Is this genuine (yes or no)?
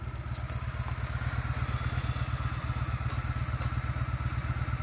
yes